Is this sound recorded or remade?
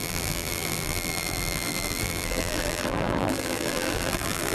remade